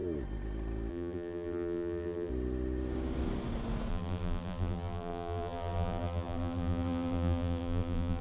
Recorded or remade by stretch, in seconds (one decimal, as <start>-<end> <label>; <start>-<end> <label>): 0.0-0.9 recorded; 0.9-2.3 remade; 2.3-3.9 recorded; 3.9-8.2 remade